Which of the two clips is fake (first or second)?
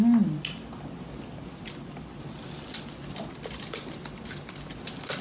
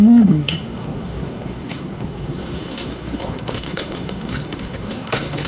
second